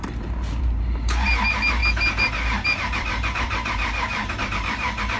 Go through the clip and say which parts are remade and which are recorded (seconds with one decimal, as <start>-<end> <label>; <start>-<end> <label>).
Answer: 0.0-0.6 recorded; 0.6-1.8 remade; 1.8-2.8 recorded; 2.8-5.2 remade